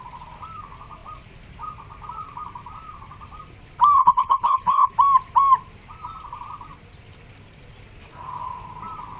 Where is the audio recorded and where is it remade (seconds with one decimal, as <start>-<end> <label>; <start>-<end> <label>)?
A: 0.0-4.0 recorded; 4.0-4.9 remade; 4.9-9.2 recorded